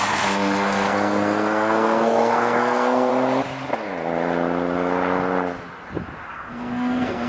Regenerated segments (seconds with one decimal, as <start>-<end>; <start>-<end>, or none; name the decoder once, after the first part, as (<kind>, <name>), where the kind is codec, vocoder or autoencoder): 0.0-3.1 (codec, SNAC); 6.3-7.3

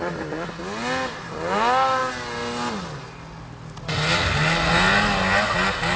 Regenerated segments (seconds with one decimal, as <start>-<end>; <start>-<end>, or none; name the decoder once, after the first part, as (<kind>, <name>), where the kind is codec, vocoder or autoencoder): none